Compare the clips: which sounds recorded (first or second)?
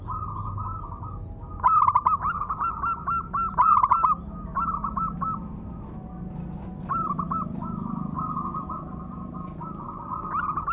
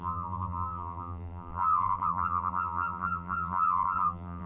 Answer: first